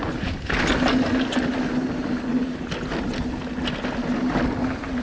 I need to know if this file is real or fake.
real